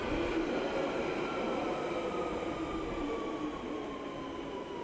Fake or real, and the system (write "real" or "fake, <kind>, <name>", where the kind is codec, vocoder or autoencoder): real